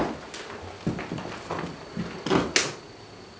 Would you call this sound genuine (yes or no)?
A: yes